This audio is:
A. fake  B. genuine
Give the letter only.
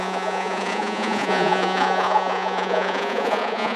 A